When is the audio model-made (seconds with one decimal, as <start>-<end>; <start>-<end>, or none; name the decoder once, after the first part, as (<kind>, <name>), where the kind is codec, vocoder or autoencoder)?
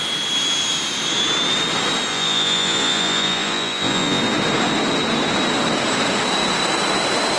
2.1-4.2 (vocoder, Vocos)